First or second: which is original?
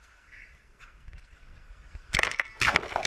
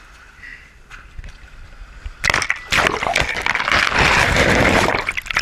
second